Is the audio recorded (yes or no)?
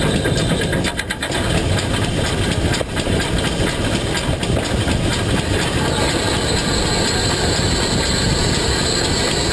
yes